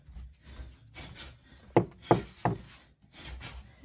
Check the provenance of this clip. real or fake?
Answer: real